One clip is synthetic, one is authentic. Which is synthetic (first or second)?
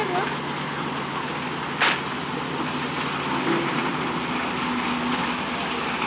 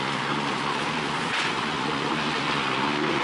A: second